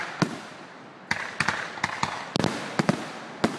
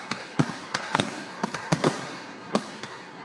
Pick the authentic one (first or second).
first